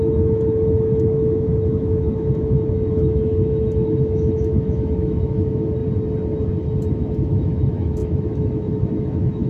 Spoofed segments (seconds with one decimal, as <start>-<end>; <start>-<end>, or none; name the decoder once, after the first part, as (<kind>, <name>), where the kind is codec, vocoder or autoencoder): 0.0-5.8 (autoencoder, DAC-VAE); 6.9-9.5